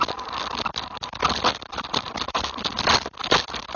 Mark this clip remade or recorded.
recorded